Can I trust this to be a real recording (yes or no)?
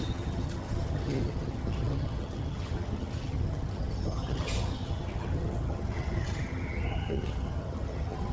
no